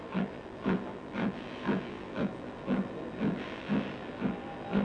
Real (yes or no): no